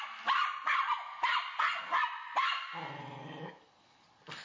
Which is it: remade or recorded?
recorded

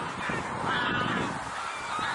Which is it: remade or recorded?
recorded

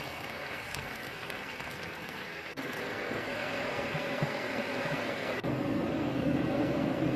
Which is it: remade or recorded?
remade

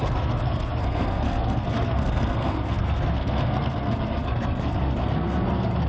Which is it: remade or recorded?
remade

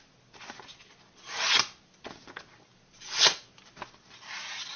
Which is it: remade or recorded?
recorded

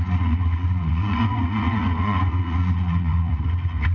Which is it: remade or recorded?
remade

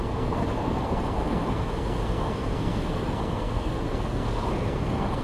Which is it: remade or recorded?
remade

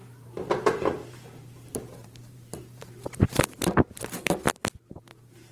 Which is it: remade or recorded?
remade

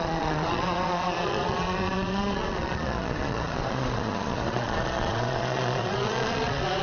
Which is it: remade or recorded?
remade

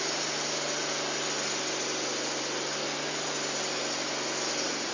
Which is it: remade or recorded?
recorded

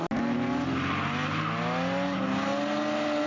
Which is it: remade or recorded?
recorded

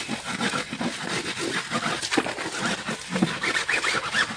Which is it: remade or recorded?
recorded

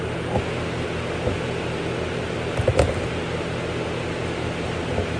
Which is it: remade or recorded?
recorded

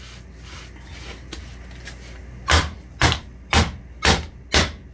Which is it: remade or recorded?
recorded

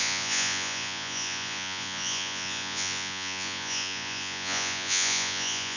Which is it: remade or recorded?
remade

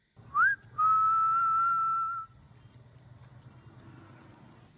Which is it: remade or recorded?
recorded